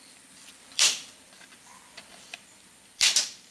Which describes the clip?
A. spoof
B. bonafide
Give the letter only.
A